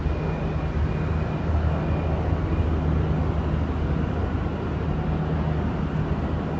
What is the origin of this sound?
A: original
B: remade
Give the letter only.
A